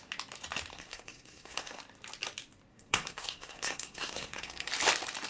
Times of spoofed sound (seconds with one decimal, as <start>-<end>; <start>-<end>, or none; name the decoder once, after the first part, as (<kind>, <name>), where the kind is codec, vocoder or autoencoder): 0.7-1.8 (codec, SNAC); 2.7-4.7